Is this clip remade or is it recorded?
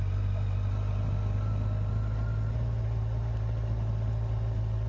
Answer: recorded